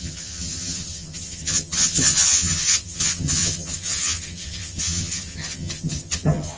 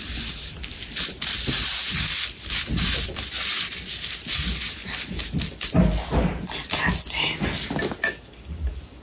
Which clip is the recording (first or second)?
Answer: second